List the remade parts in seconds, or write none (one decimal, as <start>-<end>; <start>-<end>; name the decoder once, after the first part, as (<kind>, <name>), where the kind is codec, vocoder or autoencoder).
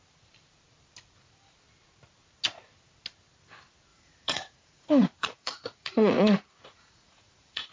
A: 3.9-7.7 (vocoder, Vocos)